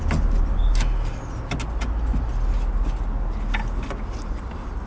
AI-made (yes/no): no